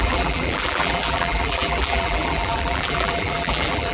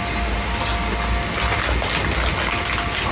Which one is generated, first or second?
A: first